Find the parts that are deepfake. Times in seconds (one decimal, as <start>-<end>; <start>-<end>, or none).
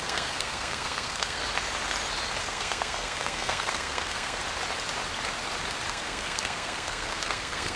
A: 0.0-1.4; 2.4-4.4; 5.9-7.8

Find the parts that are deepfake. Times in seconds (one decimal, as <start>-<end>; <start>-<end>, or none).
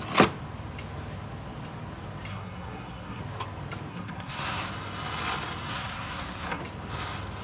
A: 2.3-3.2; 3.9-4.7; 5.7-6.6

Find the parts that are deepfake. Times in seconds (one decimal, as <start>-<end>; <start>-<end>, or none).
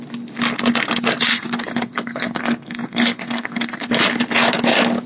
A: 1.3-3.9